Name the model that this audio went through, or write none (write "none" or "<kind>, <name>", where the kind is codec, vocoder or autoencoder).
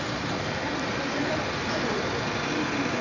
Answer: vocoder, BigVGAN v2